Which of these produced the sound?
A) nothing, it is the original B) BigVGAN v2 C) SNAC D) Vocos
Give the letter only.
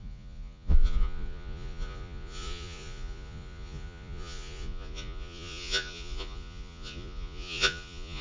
D